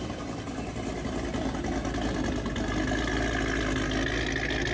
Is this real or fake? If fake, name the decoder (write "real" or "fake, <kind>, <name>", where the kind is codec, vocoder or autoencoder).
real